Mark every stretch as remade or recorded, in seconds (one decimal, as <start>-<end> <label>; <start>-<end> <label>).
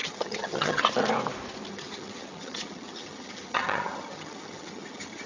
0.0-0.8 remade; 0.8-1.7 recorded; 1.7-5.3 remade